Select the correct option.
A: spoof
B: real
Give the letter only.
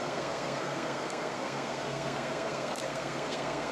A